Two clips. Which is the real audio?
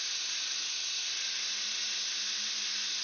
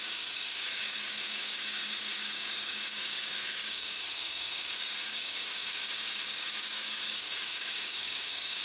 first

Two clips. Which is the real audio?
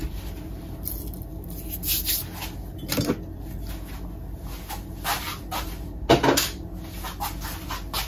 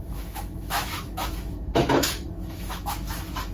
first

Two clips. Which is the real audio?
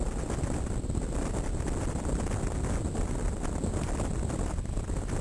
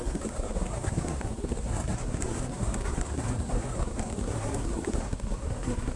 first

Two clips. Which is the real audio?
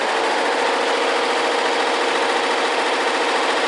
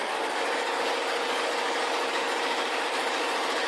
first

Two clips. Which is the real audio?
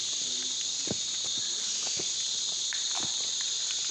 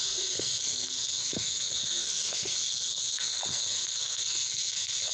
first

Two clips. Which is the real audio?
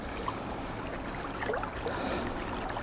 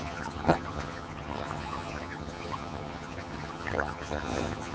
first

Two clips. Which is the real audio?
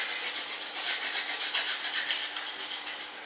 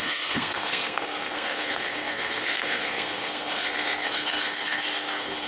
first